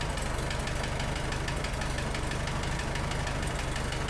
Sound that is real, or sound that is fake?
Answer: real